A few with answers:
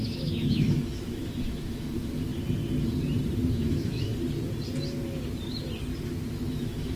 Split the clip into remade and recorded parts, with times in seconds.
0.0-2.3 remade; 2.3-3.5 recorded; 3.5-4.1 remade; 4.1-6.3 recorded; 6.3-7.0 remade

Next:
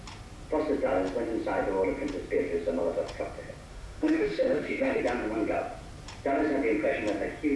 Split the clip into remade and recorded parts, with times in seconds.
0.0-3.7 recorded; 3.7-5.0 remade; 5.0-7.6 recorded

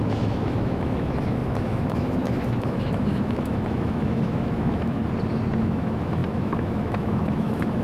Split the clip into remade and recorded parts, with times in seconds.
0.0-5.0 remade; 5.0-5.6 recorded; 5.6-7.8 remade

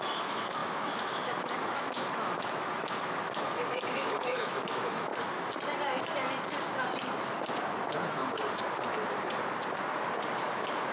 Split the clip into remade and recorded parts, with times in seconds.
0.0-5.1 remade; 5.1-10.4 recorded; 10.4-10.9 remade

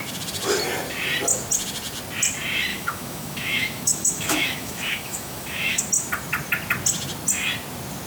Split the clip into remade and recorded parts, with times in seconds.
0.0-2.7 recorded; 2.7-5.8 remade; 5.8-8.1 recorded

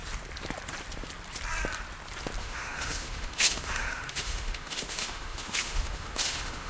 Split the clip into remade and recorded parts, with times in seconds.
0.0-2.4 recorded; 2.4-6.7 remade

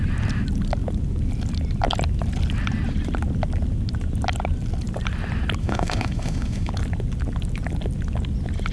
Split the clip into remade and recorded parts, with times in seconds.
0.0-5.6 recorded; 5.6-6.7 remade; 6.7-8.7 recorded